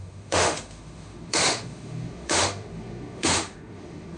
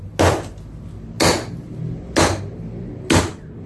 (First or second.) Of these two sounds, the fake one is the first